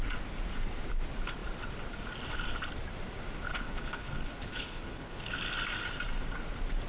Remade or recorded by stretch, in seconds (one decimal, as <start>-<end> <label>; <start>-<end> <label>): 0.0-3.5 recorded; 3.5-5.3 remade; 5.3-6.9 recorded